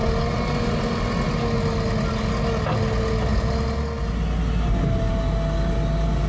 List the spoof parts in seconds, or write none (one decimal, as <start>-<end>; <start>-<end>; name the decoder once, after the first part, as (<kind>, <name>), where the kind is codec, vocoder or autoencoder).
none